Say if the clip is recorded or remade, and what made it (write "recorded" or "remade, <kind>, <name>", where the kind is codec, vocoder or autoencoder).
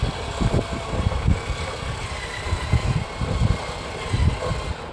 recorded